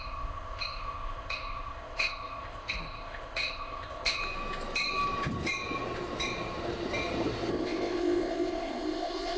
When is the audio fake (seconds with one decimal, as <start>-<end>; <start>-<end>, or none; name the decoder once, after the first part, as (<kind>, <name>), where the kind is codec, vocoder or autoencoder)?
0.0-4.2 (codec, ZipCodec); 7.5-9.4